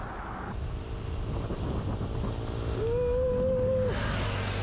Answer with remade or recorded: recorded